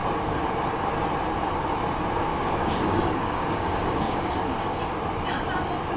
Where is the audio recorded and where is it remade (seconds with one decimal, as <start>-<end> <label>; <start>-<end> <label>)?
0.0-2.3 recorded; 2.3-4.8 remade; 4.8-6.0 recorded